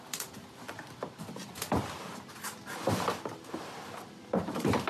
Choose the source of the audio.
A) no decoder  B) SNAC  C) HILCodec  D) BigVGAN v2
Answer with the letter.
D